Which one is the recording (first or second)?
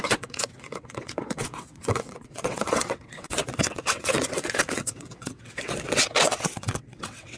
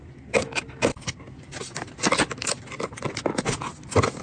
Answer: second